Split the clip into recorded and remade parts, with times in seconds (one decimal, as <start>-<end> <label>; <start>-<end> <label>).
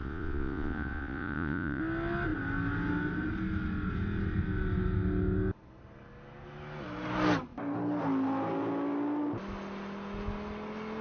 0.0-1.8 remade; 1.8-11.0 recorded